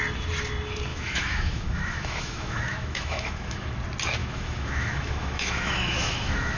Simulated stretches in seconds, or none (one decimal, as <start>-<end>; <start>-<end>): 0.9-3.7; 4.2-6.6